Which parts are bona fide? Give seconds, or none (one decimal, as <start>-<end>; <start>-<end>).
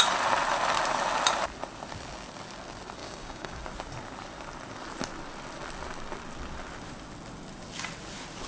0.0-3.0; 3.6-8.5